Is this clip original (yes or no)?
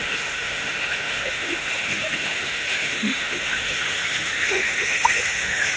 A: no